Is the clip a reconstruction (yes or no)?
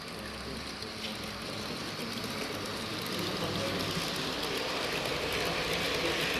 no